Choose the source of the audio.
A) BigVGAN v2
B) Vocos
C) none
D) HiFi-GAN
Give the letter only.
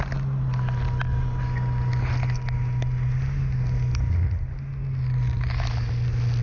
C